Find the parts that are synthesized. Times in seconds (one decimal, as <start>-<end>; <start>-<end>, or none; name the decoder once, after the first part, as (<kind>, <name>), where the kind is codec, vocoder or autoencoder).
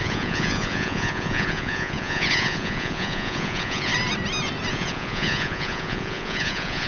0.0-3.9 (vocoder, Vocos); 4.7-6.9